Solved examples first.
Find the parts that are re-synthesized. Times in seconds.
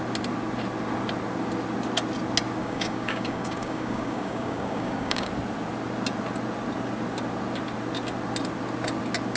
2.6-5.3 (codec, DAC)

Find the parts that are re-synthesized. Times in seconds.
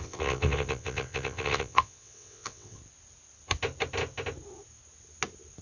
0.0-2.8 (vocoder, WaveNeXt)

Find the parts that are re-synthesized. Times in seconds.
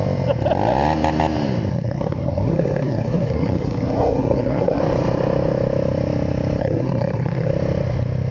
1.7-4.8 (codec, SNAC); 6.6-7.5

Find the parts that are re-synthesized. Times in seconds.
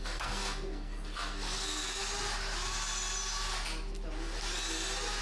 0.0-2.0 (codec, SNAC)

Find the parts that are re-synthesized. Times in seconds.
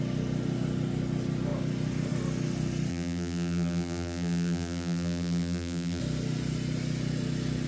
2.9-6.0 (vocoder, BigVGAN v2)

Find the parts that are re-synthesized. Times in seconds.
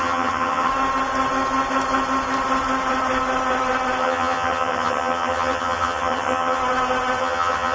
0.0-0.7 (vocoder, HiFi-GAN); 4.0-6.6; 7.2-7.7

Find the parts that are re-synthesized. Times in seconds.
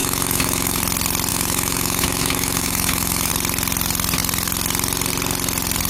0.0-0.8 (autoencoder, DAC-VAE); 1.3-3.3